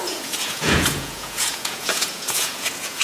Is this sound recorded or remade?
remade